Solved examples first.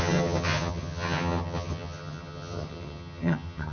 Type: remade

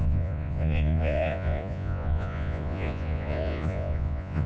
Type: remade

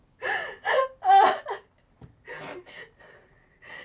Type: recorded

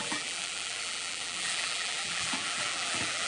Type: remade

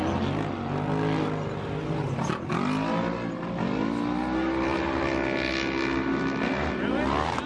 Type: recorded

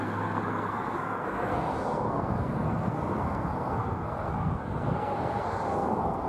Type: remade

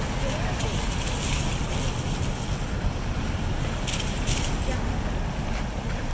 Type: recorded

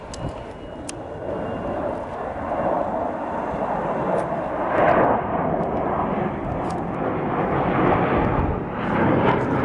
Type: recorded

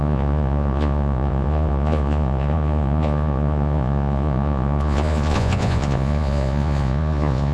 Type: remade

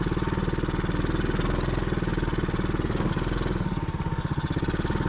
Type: recorded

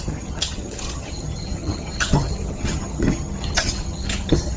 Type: remade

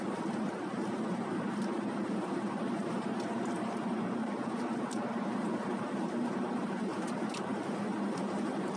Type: remade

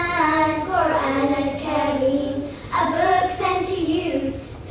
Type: recorded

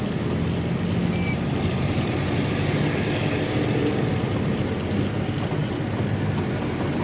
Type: recorded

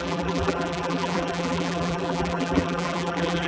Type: remade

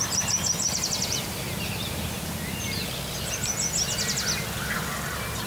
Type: recorded